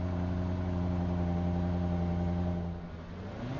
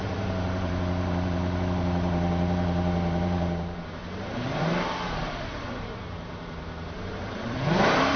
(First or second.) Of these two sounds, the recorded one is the first